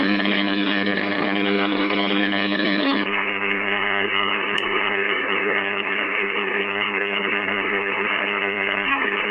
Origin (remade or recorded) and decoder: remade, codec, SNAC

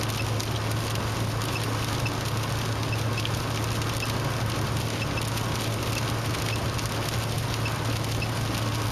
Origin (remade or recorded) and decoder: recorded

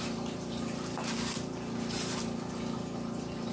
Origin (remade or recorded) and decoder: recorded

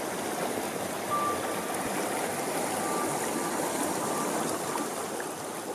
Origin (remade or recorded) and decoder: recorded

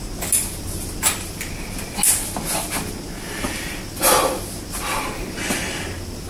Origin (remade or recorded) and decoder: recorded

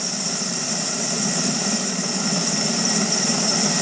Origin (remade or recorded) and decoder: recorded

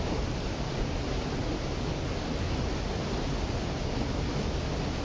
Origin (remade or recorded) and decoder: recorded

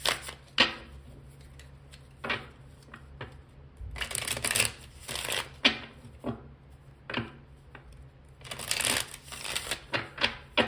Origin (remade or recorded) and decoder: recorded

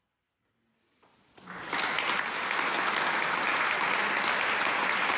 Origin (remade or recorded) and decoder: recorded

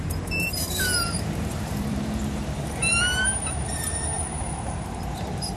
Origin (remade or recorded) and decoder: remade, vocoder, BigVGAN v2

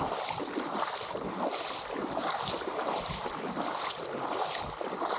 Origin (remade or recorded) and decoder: recorded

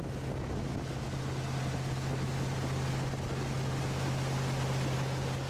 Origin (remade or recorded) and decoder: recorded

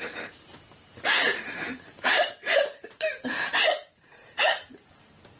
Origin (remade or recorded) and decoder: remade, vocoder, BigVGAN v2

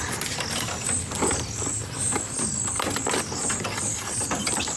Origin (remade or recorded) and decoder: recorded